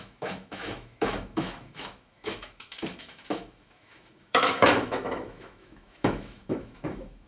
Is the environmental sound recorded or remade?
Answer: remade